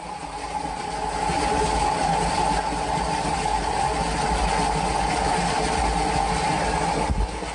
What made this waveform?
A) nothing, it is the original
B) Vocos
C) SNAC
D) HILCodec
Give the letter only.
A